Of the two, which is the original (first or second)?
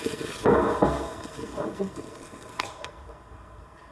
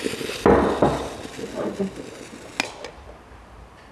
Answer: second